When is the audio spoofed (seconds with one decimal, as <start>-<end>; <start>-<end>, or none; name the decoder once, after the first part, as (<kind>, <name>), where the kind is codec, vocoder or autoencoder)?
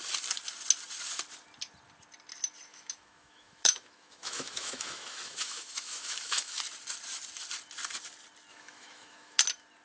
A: 2.7-6.6 (autoencoder, DAC-VAE); 8.5-9.4